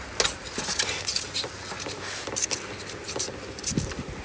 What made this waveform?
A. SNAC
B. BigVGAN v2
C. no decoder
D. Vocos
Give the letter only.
C